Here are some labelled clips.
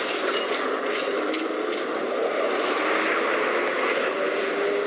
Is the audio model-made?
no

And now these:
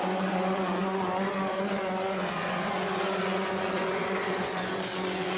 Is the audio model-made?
yes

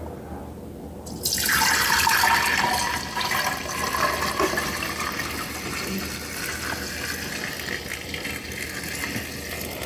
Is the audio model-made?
no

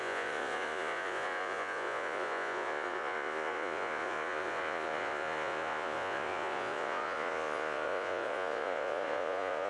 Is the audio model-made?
yes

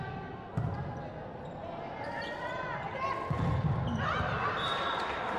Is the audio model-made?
no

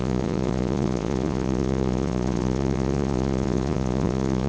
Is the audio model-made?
yes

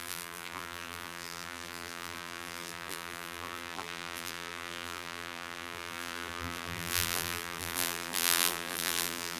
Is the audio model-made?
yes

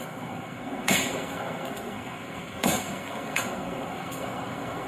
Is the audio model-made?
yes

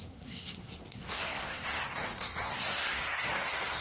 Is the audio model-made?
yes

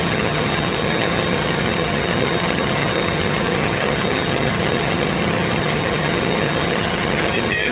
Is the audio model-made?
yes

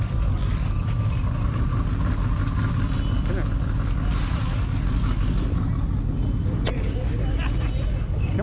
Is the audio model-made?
no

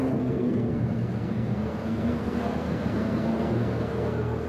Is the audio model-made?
yes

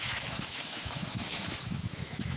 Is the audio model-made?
yes